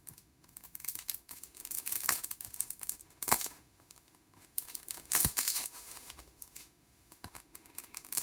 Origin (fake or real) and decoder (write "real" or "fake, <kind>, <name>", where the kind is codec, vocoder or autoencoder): fake, autoencoder, DAC-VAE